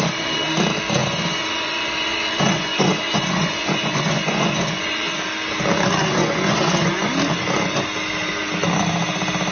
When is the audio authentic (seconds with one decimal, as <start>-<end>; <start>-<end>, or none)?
0.0-1.0; 5.2-6.0; 7.1-9.5